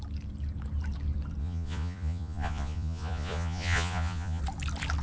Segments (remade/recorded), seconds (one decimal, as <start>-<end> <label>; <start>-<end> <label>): 0.0-1.4 recorded; 1.4-4.4 remade; 4.4-5.0 recorded